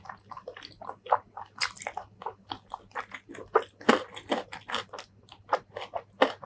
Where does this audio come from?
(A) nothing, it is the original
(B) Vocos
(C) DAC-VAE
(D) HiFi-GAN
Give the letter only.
A